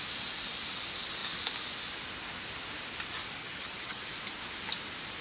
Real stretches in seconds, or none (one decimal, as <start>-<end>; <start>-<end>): 0.0-3.4; 4.1-5.2